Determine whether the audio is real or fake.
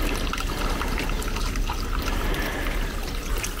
real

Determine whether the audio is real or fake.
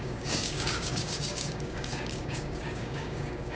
fake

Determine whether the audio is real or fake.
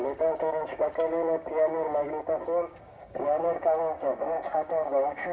fake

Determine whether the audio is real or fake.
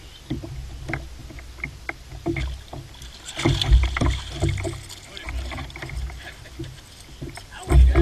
real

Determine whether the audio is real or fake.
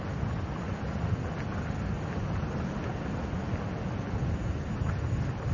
real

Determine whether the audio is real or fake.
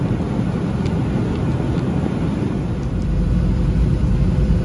real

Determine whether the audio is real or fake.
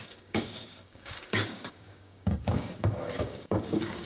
fake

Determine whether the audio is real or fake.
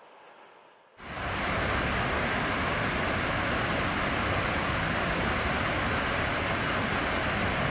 real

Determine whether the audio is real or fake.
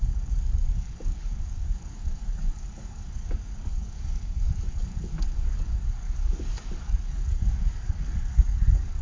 fake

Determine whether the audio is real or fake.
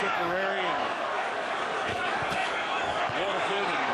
fake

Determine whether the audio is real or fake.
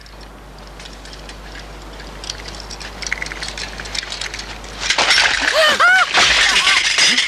real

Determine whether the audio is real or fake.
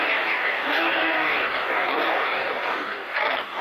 fake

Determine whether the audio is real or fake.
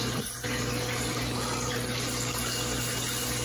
real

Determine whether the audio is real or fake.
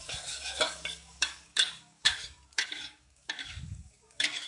fake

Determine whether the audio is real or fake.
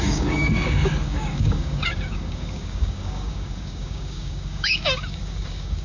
fake